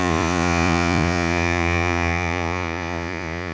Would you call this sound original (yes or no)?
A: no